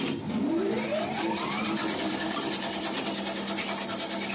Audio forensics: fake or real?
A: real